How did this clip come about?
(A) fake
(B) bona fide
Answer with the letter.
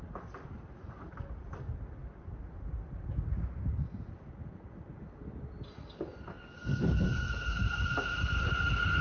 B